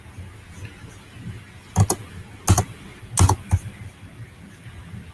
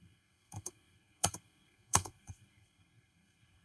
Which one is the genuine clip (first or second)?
first